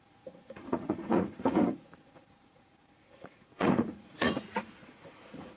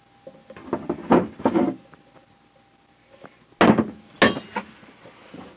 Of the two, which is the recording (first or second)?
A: second